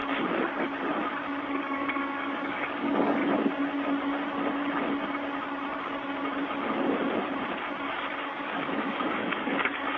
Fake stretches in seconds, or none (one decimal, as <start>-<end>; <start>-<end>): 1.5-3.2; 8.2-10.0